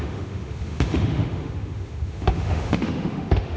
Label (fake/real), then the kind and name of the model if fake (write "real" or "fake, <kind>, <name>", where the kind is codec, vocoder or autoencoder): fake, autoencoder, DAC-VAE